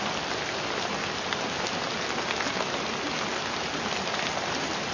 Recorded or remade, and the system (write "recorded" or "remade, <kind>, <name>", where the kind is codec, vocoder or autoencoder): recorded